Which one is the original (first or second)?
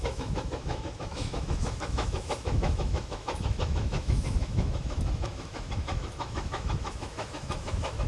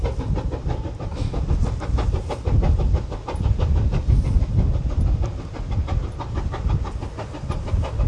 second